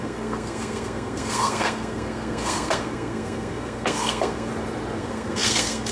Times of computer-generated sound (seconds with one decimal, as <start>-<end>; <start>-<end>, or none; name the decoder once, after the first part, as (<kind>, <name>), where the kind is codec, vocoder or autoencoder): 0.0-4.5 (codec, SNAC); 5.0-5.9